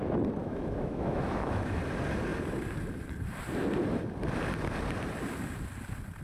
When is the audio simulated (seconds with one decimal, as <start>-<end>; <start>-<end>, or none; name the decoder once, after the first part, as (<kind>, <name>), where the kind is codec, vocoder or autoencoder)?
0.4-1.8 (autoencoder, DAC-VAE)

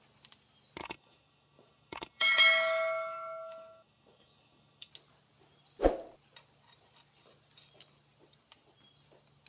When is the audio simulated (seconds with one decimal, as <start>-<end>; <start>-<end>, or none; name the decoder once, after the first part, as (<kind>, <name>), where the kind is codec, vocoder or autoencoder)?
0.8-4.9 (autoencoder, DAC-VAE)

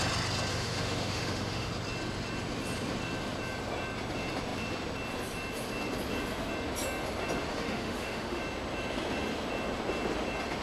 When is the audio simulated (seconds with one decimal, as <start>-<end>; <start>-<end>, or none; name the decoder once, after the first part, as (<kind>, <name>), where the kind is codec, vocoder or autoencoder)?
0.5-1.7 (autoencoder, DAC-VAE); 7.5-8.4

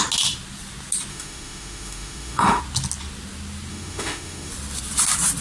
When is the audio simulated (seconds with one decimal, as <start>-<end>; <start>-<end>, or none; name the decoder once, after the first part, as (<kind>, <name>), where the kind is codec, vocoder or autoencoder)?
1.1-2.6 (autoencoder, DAC-VAE); 3.7-4.5